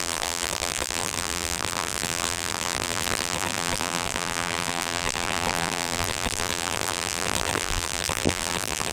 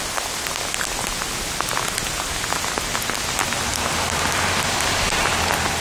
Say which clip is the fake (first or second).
first